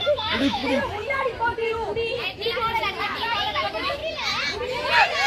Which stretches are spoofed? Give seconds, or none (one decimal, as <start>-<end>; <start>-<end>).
0.0-0.6; 3.0-4.0